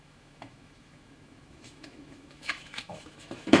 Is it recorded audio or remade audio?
remade